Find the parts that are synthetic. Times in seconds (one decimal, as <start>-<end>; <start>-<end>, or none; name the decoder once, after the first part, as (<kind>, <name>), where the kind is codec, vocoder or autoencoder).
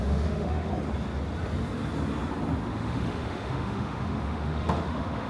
0.0-0.7 (autoencoder, DAC-VAE); 2.7-5.3